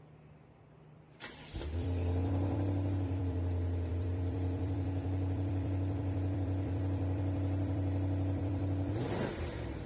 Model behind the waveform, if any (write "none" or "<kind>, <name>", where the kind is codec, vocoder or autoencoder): vocoder, BigVGAN v2